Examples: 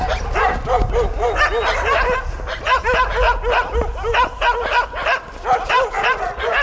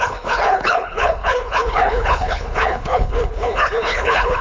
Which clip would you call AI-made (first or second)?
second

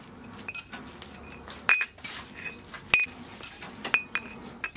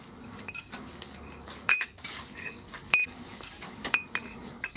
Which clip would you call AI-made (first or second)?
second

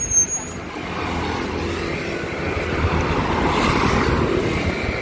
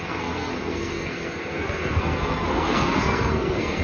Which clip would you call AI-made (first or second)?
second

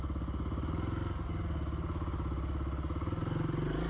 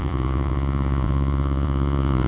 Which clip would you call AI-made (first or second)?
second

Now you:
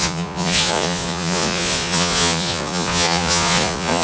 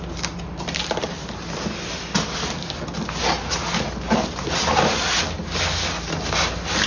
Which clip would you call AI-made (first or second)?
first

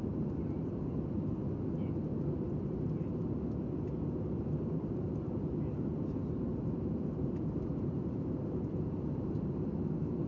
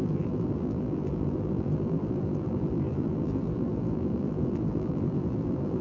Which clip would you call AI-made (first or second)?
second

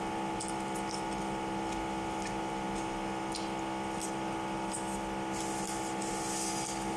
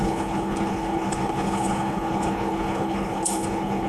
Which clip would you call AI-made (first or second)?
second